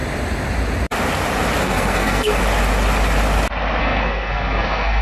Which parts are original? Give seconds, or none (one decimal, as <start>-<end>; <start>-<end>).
0.0-1.6; 2.4-3.8